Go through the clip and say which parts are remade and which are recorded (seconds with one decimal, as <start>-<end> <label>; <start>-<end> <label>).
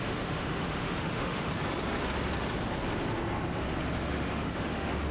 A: 0.0-1.5 remade; 1.5-4.0 recorded; 4.0-5.1 remade